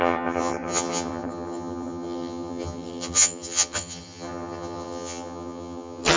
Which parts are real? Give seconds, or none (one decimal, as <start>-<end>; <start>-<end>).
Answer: none